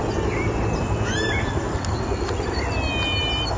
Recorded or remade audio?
recorded